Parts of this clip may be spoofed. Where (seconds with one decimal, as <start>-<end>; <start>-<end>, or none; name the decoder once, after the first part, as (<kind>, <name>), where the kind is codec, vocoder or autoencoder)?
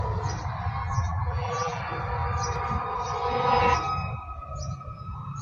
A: 0.8-1.8 (vocoder, BigVGAN v2)